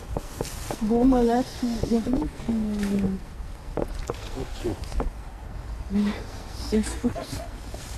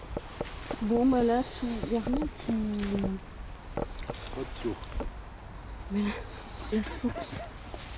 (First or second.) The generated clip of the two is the first